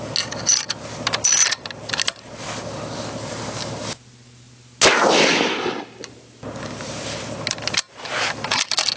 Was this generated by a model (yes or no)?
no